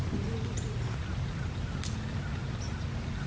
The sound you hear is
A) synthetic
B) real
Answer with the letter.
B